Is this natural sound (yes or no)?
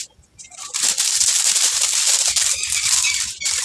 yes